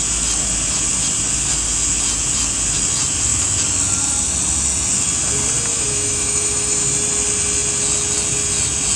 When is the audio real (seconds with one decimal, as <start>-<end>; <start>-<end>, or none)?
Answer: 0.0-5.7; 6.9-9.0